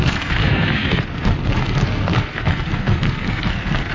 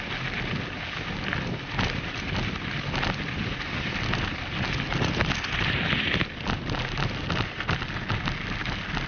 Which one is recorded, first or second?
second